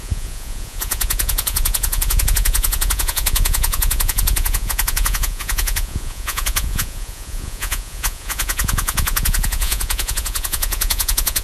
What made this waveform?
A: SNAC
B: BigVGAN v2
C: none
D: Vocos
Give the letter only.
D